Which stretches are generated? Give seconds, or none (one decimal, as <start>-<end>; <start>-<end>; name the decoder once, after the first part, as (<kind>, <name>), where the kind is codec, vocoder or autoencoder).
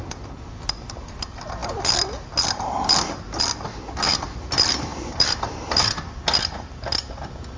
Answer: 4.9-6.0 (vocoder, BigVGAN v2)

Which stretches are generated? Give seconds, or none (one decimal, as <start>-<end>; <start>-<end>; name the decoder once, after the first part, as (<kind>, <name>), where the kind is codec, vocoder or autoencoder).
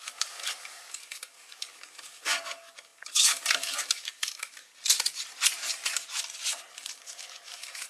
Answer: 0.0-4.7 (codec, DAC); 6.7-7.9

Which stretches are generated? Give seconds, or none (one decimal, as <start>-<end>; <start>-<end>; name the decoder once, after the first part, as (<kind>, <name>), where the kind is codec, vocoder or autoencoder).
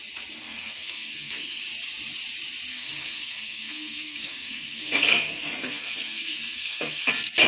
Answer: 0.4-1.6 (codec, SNAC); 2.7-7.1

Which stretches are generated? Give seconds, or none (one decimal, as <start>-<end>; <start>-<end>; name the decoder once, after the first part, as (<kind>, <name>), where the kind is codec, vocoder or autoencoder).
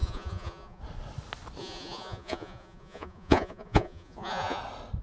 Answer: 0.0-0.8 (vocoder, Vocos); 1.6-4.6